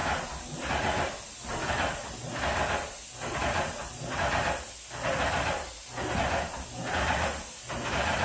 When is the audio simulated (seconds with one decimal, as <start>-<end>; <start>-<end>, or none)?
none